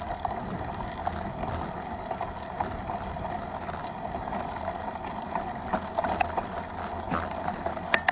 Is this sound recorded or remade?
recorded